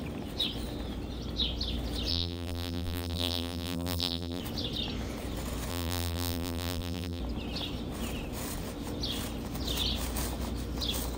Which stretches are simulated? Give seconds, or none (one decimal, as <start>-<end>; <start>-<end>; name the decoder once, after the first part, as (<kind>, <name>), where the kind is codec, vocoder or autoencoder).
2.1-4.4 (vocoder, BigVGAN v2); 5.7-7.2